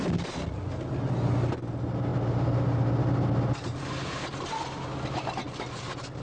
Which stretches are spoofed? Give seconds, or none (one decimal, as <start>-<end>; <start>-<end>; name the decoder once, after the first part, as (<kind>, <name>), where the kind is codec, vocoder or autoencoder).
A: none